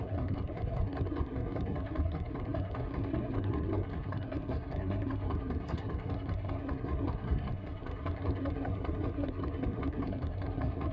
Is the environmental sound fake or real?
fake